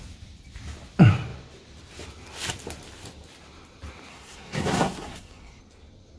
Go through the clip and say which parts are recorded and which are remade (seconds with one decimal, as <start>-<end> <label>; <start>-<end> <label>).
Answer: 0.0-4.1 recorded; 4.1-5.6 remade; 5.6-6.2 recorded